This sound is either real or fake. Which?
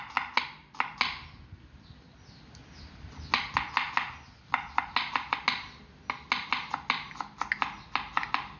real